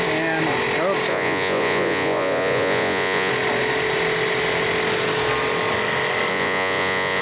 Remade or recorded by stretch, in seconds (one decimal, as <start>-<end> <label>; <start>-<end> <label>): 0.0-1.1 recorded; 1.1-3.3 remade; 3.3-6.3 recorded; 6.3-7.2 remade